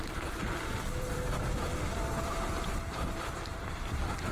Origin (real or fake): fake